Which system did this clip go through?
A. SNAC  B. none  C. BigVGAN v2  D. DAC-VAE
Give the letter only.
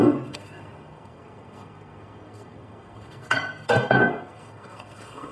A